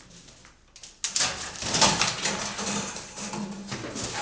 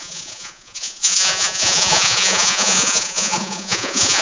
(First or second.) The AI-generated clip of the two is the second